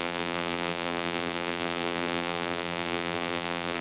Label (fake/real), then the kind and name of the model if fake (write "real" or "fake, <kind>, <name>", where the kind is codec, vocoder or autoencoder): fake, vocoder, BigVGAN v2